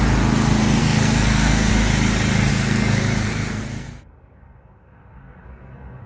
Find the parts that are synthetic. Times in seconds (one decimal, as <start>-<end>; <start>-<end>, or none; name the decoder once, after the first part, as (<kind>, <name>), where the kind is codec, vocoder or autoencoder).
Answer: 0.8-1.7 (codec, SNAC); 2.5-6.1

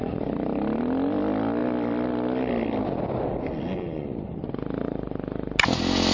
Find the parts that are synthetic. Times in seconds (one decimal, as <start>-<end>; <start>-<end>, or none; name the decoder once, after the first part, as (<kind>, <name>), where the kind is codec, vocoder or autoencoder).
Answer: none

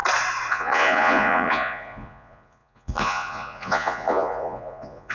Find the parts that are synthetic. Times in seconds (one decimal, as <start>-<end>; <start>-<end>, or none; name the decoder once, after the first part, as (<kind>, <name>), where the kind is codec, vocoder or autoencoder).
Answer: 0.5-5.1 (vocoder, Vocos)

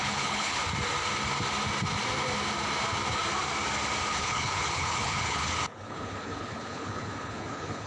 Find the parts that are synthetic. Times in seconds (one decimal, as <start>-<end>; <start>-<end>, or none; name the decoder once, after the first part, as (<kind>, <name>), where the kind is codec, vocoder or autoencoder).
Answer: 0.0-0.6 (codec, HILCodec); 4.1-7.9

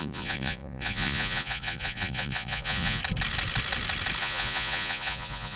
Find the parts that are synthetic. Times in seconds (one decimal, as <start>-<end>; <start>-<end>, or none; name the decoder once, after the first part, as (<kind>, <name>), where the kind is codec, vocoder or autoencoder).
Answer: 0.0-3.0 (vocoder, Vocos); 4.2-5.6

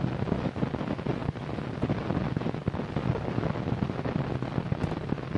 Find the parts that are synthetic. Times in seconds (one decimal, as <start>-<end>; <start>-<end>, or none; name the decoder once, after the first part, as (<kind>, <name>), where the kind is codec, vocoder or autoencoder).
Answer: none